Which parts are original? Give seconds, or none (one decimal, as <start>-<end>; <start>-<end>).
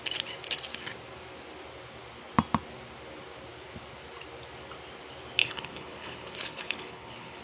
0.0-5.4